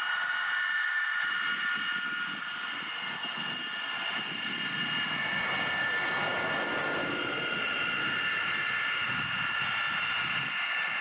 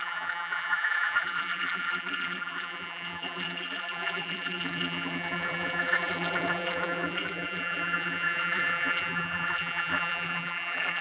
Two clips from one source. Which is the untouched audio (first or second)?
first